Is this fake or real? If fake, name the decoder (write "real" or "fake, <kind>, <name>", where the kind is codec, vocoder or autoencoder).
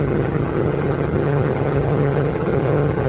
fake, vocoder, HiFi-GAN